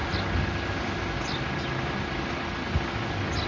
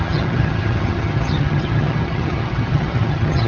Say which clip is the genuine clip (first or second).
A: first